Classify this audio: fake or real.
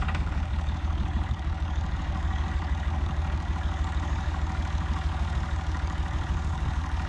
fake